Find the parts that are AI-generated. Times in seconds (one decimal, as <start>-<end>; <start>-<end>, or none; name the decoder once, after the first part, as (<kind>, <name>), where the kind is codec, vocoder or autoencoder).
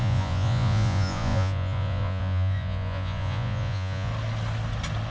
0.0-4.1 (vocoder, Vocos)